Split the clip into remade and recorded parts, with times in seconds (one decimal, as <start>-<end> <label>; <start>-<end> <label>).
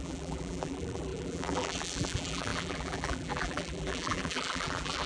0.0-5.1 remade